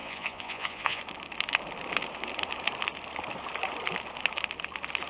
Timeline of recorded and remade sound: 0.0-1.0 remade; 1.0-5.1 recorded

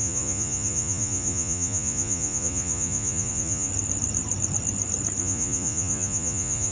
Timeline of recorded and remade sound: 0.0-3.7 remade; 3.7-5.2 recorded; 5.2-6.7 remade

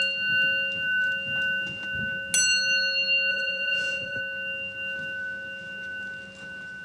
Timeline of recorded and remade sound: 0.0-3.3 recorded; 3.3-4.2 remade; 4.2-6.8 recorded

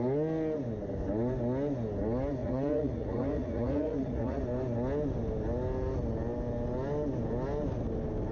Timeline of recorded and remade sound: 0.0-2.4 recorded; 2.4-4.4 remade; 4.4-8.3 recorded

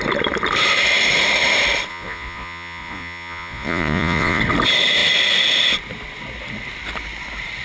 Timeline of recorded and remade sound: 0.0-1.9 recorded; 1.9-4.4 remade; 4.4-7.6 recorded

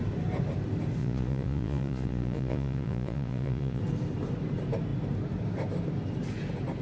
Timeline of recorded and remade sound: 0.0-1.0 recorded; 1.0-3.8 remade; 3.8-6.8 recorded